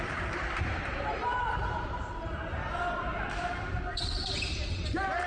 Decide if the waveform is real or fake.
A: fake